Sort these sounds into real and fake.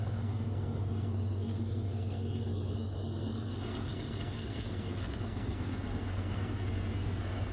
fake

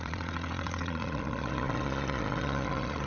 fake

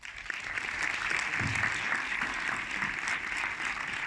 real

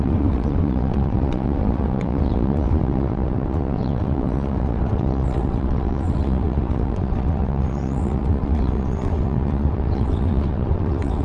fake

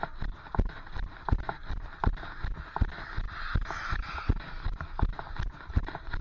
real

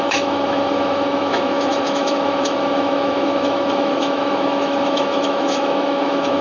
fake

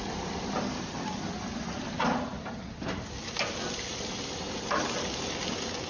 real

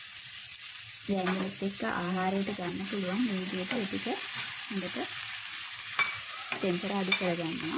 fake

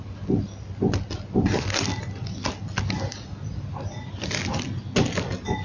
real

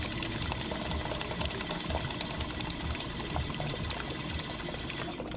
real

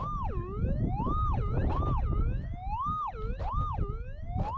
real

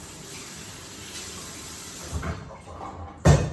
fake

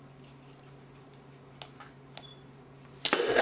real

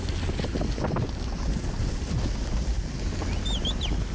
real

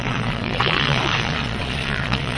fake